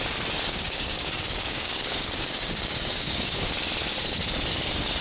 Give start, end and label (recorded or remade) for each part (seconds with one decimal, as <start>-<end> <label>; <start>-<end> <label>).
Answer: 0.0-0.5 recorded; 0.5-3.5 remade; 3.5-5.0 recorded